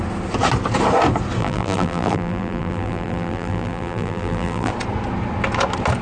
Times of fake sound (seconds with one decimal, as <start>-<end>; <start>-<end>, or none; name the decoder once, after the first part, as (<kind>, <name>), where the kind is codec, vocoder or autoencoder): 1.4-4.7 (vocoder, BigVGAN v2)